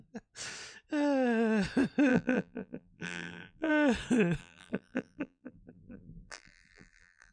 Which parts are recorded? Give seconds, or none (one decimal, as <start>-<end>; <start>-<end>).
0.0-2.1; 3.7-4.4